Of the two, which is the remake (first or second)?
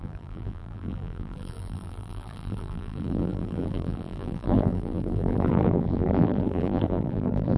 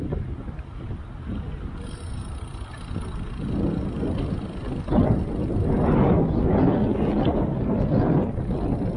first